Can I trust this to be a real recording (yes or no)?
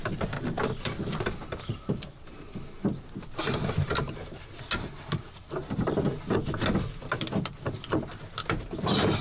yes